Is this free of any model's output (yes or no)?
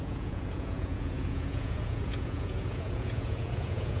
no